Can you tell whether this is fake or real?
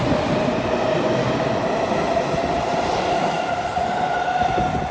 real